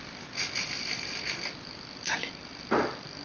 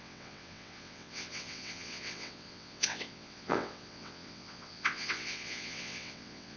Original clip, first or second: first